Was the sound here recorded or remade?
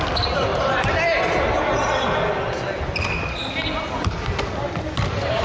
recorded